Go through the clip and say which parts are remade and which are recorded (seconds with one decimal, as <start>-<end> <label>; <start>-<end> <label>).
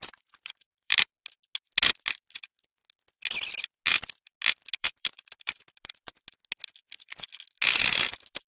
0.0-1.1 remade; 1.1-4.8 recorded; 4.8-6.1 remade; 6.1-7.7 recorded; 7.7-8.5 remade